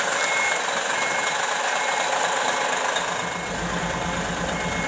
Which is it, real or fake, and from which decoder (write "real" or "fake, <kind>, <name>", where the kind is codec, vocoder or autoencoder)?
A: real